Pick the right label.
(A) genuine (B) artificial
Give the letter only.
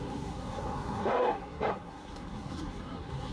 B